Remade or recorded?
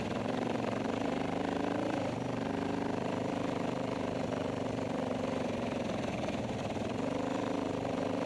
remade